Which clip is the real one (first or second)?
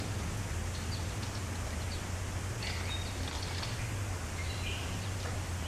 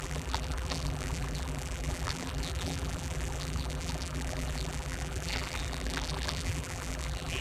first